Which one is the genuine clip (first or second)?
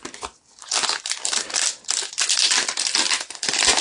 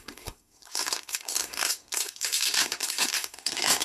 first